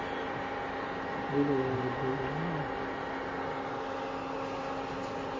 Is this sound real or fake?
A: real